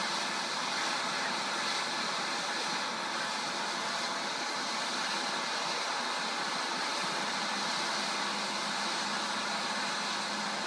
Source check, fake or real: real